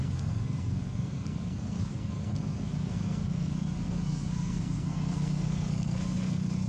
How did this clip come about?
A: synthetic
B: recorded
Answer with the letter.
A